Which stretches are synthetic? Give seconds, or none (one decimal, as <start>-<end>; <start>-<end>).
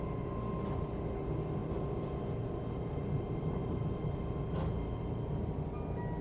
none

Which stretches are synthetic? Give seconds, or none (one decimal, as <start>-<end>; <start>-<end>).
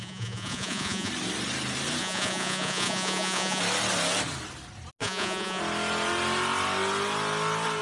0.0-1.1; 2.0-3.6; 5.0-5.6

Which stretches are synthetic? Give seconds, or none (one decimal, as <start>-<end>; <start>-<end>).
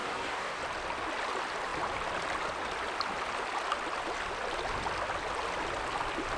0.0-0.6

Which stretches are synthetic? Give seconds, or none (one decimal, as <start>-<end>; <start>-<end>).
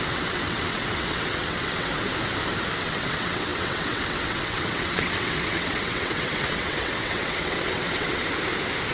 0.0-1.9; 2.8-8.2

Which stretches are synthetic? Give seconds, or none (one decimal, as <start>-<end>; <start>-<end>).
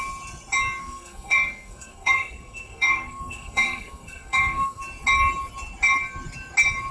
0.8-4.8